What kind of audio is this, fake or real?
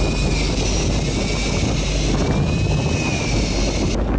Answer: real